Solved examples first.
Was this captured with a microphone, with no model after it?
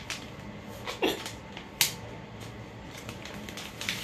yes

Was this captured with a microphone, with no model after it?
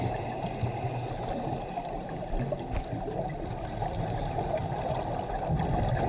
yes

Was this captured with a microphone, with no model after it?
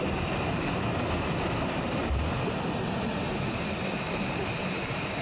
yes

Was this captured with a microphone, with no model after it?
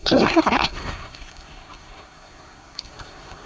no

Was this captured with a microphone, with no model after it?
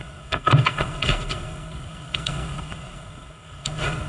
no